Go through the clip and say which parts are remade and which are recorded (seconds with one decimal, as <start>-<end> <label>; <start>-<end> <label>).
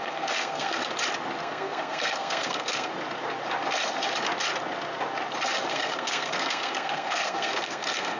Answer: 0.0-0.8 remade; 0.8-1.4 recorded; 1.4-2.9 remade; 2.9-5.7 recorded; 5.7-8.2 remade